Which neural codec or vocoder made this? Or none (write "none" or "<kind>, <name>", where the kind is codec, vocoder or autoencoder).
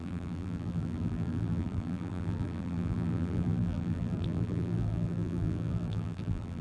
vocoder, BigVGAN v2